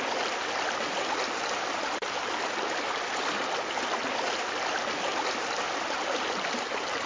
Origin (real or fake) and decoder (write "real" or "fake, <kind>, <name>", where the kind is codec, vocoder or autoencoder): real